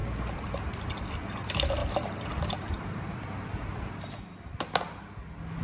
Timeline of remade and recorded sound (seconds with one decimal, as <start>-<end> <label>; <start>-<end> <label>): 0.0-5.6 recorded